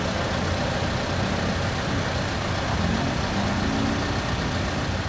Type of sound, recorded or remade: recorded